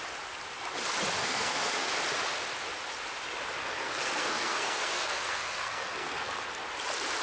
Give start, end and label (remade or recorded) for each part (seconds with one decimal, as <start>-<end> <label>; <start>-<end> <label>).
0.0-1.2 recorded; 1.2-1.9 remade; 1.9-3.6 recorded; 3.6-6.4 remade; 6.4-7.2 recorded